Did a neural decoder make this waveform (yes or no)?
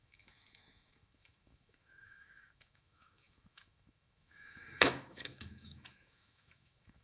yes